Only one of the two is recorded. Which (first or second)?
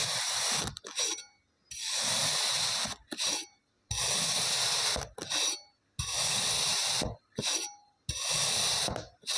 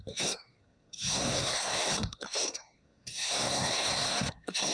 first